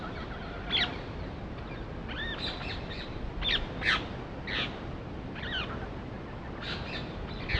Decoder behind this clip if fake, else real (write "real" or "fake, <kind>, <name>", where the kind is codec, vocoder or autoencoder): real